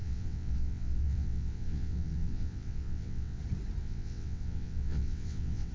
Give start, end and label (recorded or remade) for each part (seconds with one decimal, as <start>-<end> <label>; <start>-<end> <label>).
0.0-3.4 remade; 3.4-3.8 recorded; 3.8-5.7 remade